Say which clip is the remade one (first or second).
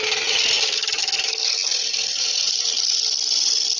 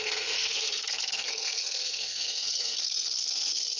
second